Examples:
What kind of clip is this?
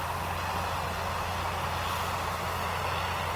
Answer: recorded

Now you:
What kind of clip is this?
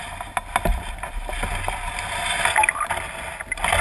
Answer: recorded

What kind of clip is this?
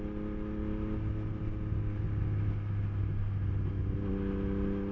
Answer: recorded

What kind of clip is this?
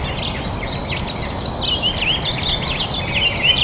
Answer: recorded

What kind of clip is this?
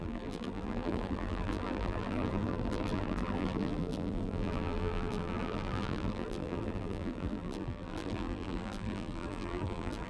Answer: remade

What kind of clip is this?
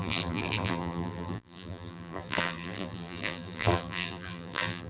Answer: remade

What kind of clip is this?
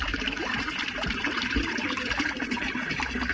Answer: remade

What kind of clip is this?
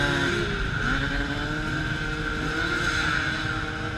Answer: recorded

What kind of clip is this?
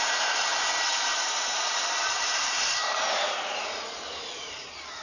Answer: remade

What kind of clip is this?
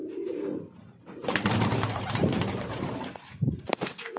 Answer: remade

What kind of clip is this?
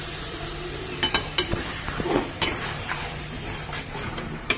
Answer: remade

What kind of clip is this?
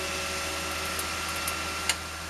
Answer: recorded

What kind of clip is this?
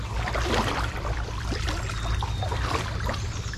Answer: recorded